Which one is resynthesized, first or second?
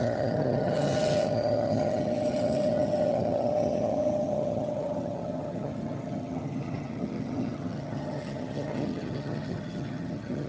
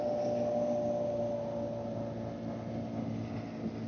first